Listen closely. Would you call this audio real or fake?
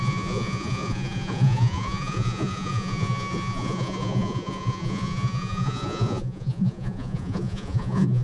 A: fake